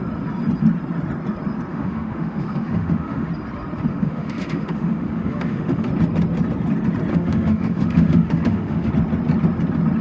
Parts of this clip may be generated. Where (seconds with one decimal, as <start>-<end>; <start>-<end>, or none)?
1.7-3.3; 3.9-5.9; 7.1-8.9